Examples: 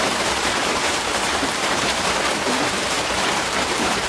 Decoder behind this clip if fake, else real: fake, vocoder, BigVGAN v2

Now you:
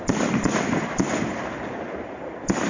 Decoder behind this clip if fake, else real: real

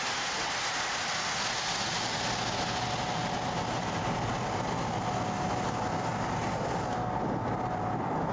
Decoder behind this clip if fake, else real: real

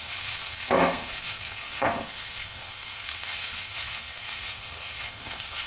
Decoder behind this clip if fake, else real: fake, codec, SNAC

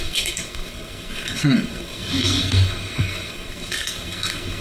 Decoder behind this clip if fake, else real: fake, codec, SNAC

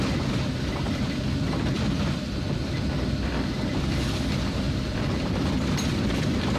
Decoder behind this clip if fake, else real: real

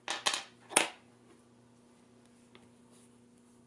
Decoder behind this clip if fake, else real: real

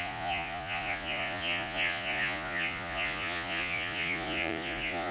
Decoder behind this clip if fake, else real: fake, vocoder, Vocos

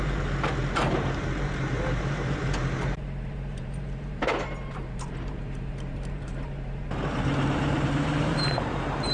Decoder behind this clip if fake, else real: fake, vocoder, BigVGAN v2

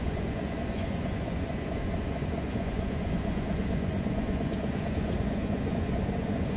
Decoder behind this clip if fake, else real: fake, vocoder, Vocos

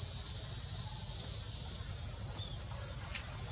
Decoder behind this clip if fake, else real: real